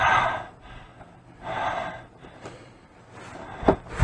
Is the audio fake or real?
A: real